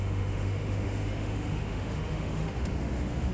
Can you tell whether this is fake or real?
fake